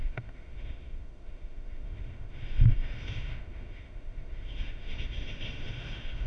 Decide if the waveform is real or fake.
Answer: fake